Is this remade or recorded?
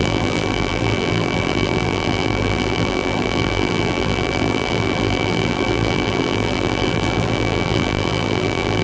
remade